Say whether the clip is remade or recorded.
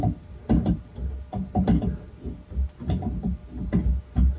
recorded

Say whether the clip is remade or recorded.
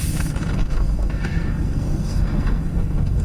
remade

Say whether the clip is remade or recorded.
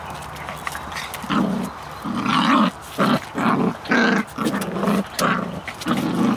recorded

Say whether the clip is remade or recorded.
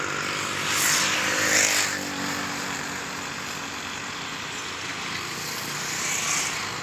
recorded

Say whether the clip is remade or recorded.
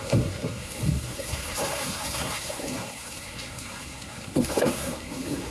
remade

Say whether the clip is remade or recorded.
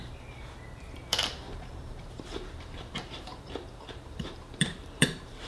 remade